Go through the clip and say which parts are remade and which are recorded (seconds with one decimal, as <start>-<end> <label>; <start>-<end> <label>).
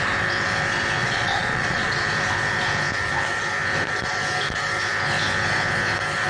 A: 0.0-1.0 recorded; 1.0-2.0 remade; 2.0-6.3 recorded